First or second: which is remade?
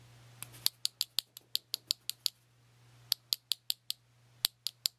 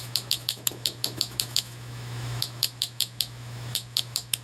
second